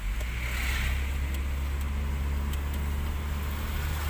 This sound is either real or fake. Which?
real